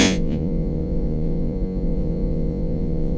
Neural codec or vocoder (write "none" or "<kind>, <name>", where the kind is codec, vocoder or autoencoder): vocoder, Vocos